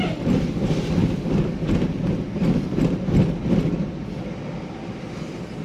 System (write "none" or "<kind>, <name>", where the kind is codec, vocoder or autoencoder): none